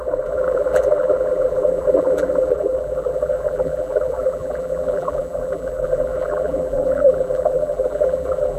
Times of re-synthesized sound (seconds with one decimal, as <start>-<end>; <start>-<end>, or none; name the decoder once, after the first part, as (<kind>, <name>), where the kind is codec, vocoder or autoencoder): 0.0-8.6 (vocoder, BigVGAN v2)